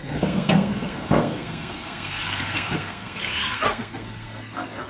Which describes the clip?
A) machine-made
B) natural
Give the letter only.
A